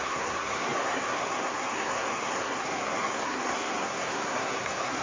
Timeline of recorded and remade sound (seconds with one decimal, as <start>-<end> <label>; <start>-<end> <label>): 0.0-5.0 remade